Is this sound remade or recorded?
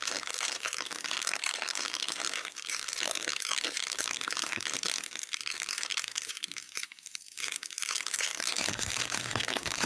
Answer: remade